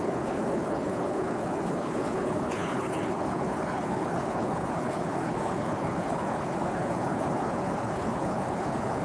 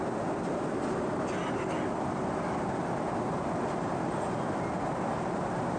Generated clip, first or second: first